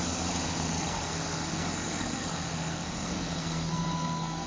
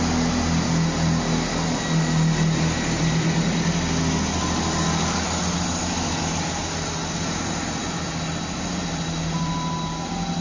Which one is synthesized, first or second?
first